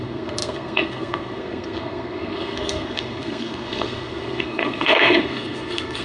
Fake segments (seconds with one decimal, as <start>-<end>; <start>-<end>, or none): 0.0-6.0